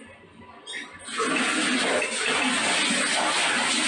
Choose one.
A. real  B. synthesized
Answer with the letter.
A